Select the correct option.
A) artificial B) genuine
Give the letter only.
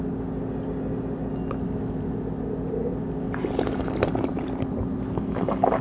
B